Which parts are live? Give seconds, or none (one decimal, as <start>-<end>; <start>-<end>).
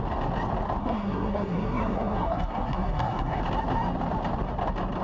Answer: 0.0-0.8; 3.4-5.0